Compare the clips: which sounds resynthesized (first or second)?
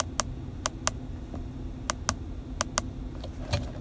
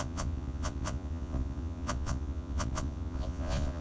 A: second